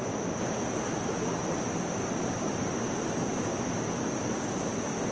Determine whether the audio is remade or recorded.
recorded